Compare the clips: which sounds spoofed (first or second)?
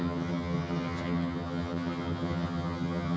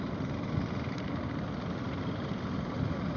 first